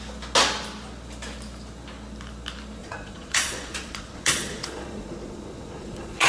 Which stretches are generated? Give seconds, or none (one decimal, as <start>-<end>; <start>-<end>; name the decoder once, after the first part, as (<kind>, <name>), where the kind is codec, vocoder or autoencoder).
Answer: 2.8-6.3 (vocoder, Vocos)